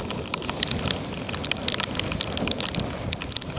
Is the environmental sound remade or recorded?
recorded